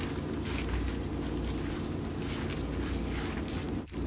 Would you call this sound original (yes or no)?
yes